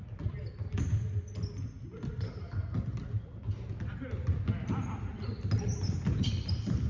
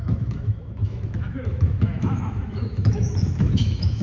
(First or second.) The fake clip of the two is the second